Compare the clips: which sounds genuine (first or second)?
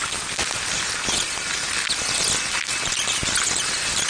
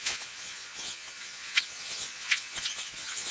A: first